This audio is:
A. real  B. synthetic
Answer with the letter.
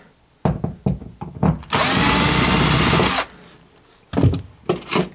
A